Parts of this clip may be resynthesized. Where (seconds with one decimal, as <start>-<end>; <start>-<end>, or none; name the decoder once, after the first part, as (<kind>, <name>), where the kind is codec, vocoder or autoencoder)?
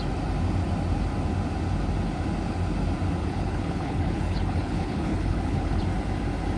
3.2-5.8 (codec, HILCodec)